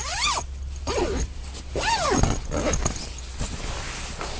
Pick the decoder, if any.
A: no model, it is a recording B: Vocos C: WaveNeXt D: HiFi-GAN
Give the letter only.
A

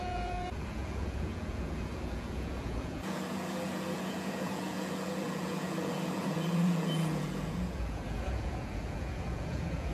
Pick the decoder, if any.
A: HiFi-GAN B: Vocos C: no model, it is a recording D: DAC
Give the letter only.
B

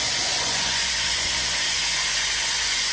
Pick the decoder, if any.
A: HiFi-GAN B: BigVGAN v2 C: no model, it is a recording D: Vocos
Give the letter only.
D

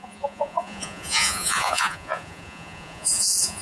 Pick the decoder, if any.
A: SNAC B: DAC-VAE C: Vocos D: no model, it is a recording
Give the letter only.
C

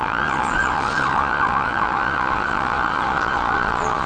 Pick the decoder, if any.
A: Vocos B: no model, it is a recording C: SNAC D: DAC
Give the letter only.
A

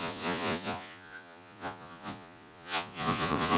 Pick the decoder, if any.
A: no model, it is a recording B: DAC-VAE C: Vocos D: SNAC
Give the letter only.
C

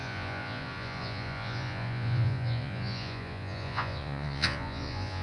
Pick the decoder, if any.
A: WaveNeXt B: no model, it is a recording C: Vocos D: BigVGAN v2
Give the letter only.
C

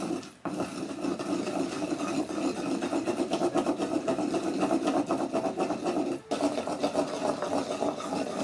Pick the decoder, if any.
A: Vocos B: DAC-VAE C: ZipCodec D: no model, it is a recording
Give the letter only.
D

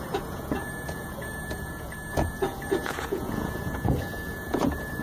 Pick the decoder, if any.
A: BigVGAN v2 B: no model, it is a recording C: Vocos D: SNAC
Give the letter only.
C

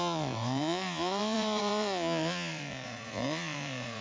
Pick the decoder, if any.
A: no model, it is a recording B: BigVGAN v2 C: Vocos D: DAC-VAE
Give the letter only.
C